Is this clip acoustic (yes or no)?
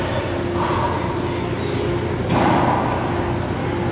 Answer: yes